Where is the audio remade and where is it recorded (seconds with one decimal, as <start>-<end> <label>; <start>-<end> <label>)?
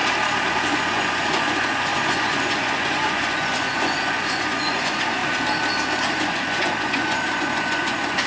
0.0-0.5 recorded; 0.5-5.2 remade; 5.2-6.0 recorded; 6.0-8.3 remade